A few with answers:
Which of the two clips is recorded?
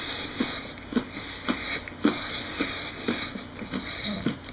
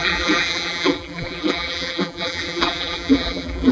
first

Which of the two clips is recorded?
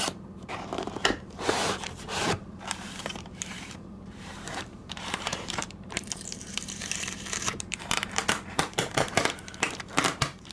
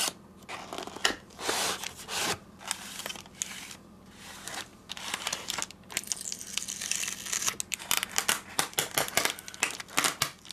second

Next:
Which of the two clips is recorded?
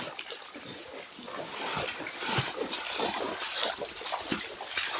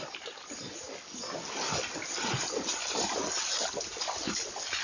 second